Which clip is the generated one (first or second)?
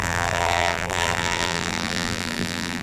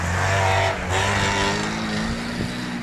first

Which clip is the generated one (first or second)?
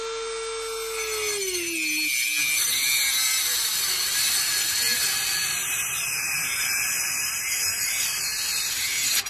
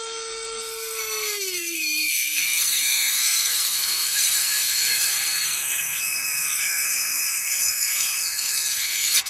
second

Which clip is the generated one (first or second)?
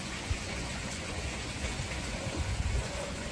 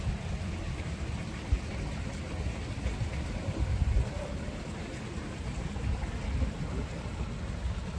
first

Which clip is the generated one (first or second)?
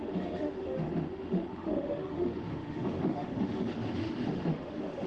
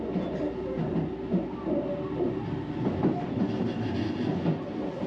first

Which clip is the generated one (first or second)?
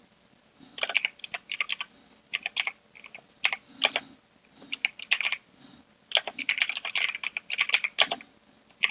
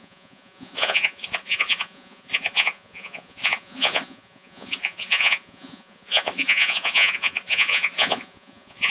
second